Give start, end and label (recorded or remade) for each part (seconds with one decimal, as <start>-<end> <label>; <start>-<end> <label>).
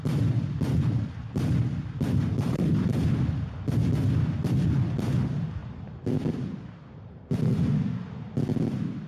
0.0-9.1 recorded